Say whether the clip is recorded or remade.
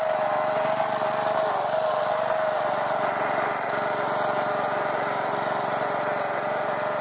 recorded